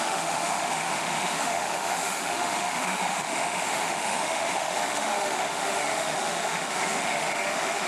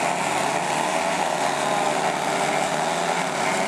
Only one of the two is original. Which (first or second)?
second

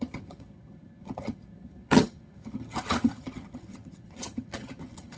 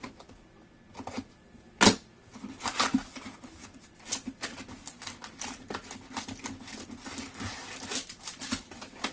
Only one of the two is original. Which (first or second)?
second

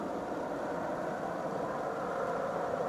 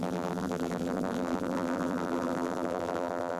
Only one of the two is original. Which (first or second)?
first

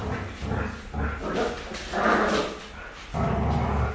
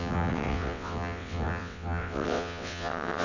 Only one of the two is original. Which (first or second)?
first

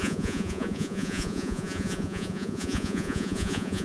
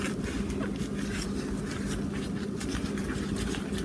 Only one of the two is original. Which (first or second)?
second